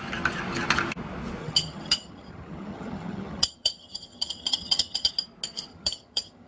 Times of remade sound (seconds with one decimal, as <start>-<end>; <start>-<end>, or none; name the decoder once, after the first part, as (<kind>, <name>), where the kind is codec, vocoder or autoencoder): 1.4-5.1 (vocoder, HiFi-GAN); 5.7-6.5